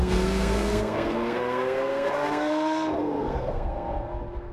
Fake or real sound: fake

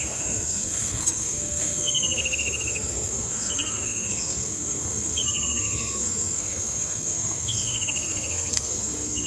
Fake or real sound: fake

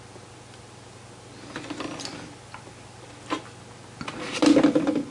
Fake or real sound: real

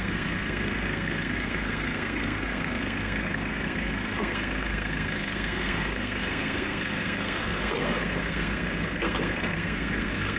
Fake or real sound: fake